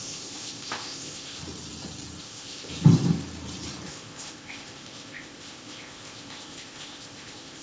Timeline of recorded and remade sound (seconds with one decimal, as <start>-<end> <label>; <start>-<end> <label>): 0.0-1.4 remade; 1.4-2.2 recorded; 2.2-2.7 remade; 2.7-3.9 recorded; 3.9-7.6 remade